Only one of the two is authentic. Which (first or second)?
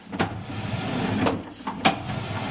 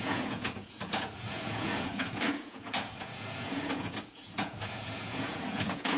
first